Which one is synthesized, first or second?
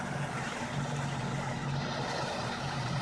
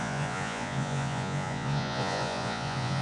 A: second